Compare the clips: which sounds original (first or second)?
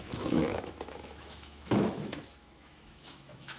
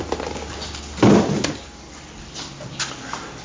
second